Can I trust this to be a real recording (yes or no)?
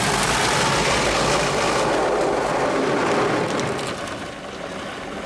yes